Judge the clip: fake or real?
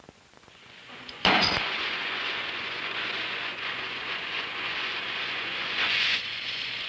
fake